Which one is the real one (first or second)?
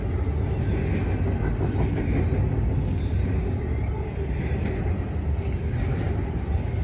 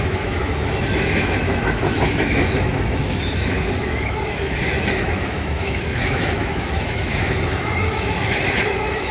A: first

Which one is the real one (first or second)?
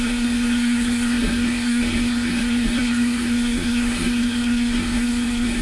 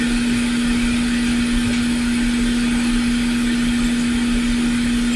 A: second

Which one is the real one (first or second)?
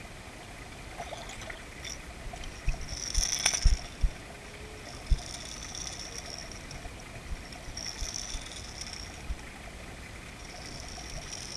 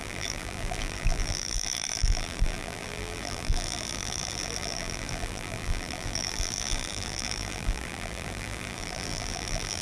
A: first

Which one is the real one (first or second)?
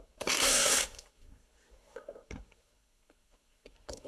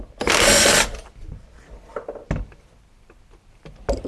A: second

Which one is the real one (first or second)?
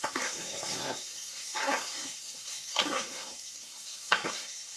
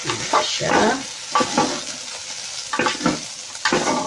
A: second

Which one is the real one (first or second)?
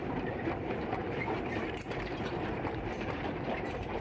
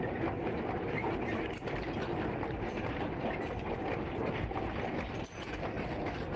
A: second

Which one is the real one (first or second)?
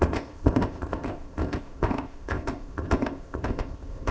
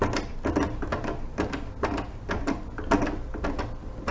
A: second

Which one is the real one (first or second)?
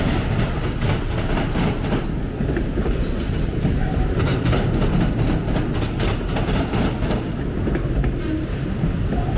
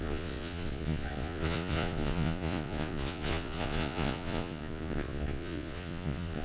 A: first